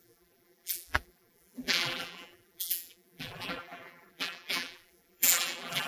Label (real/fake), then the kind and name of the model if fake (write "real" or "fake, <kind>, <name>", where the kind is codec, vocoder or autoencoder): fake, vocoder, BigVGAN v2